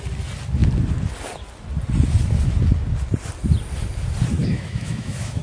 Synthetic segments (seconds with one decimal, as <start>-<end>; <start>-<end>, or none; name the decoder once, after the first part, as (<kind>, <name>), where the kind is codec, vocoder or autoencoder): 4.4-5.4 (autoencoder, DAC-VAE)